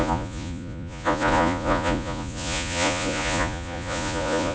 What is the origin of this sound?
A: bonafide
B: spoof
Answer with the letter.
B